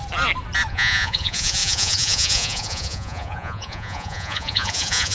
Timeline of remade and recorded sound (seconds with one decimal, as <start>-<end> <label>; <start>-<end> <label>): 0.0-0.7 recorded; 0.7-5.1 remade